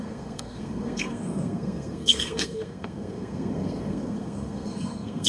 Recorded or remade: remade